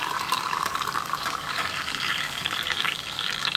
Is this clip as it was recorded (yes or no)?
no